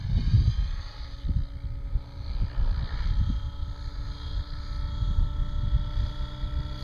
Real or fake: real